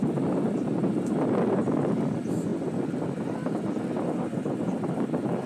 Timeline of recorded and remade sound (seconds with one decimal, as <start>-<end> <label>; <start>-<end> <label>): 0.0-5.5 recorded